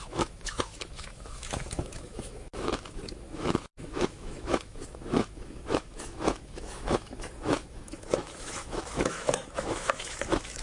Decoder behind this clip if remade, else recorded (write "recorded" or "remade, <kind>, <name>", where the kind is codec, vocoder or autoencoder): remade, autoencoder, DAC-VAE